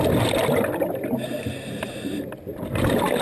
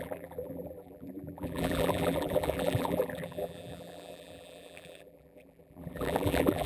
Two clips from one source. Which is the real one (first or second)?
first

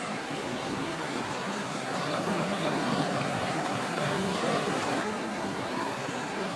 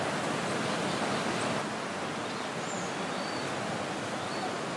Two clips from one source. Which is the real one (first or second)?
second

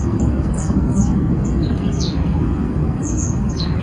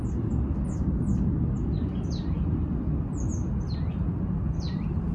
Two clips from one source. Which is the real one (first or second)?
second